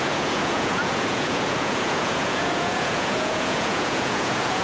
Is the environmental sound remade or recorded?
remade